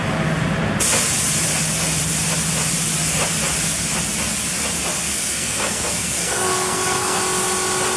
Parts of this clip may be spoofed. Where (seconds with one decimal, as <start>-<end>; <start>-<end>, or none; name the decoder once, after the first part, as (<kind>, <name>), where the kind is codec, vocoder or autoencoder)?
5.0-7.2 (codec, SNAC)